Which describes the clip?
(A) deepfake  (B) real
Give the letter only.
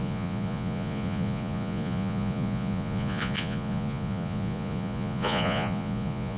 A